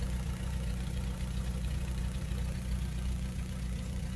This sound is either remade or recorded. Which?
remade